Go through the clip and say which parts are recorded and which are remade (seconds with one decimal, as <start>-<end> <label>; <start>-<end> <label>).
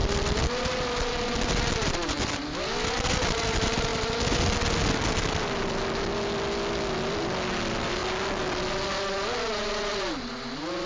0.0-10.9 recorded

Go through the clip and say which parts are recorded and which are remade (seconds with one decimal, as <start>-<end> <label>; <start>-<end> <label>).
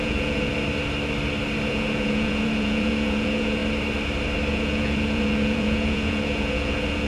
0.0-0.5 remade; 0.5-1.7 recorded; 1.7-3.6 remade; 3.6-4.5 recorded; 4.5-7.1 remade